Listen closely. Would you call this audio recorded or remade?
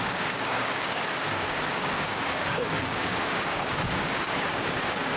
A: remade